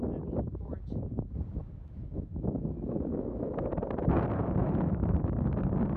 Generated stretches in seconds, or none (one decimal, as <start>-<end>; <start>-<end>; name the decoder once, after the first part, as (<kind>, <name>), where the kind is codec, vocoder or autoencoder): 1.6-3.7 (autoencoder, DAC-VAE); 4.6-5.6